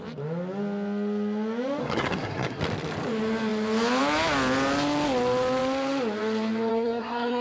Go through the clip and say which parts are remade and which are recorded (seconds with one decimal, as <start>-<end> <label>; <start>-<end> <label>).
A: 0.0-1.8 recorded; 1.8-2.6 remade; 2.6-6.7 recorded; 6.7-7.4 remade